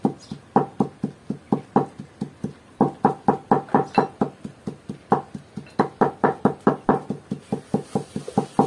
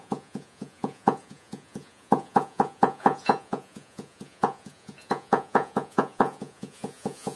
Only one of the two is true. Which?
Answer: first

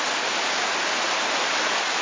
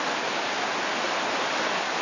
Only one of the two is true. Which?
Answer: second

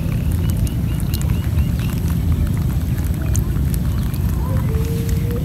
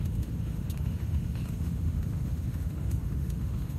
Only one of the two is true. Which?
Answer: first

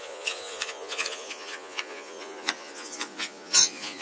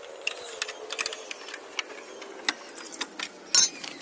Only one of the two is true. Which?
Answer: second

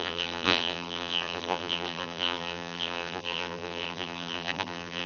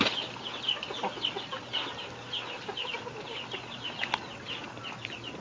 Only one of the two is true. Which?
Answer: second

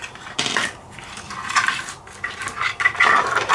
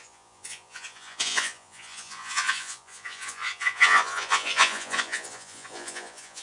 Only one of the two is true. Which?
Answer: first